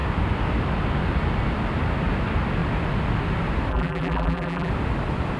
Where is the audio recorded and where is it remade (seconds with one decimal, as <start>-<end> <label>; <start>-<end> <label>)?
0.0-3.7 recorded; 3.7-4.7 remade; 4.7-5.4 recorded